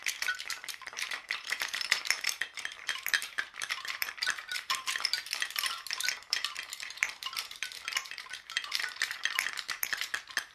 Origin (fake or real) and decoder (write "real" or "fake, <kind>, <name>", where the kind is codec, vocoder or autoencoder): fake, vocoder, BigVGAN v2